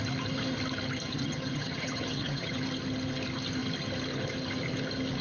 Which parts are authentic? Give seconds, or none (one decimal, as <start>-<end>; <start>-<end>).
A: 0.0-1.1; 2.6-5.2